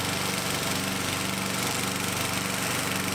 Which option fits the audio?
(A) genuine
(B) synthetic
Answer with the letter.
A